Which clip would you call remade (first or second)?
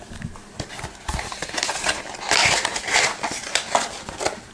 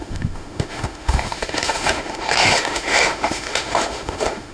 second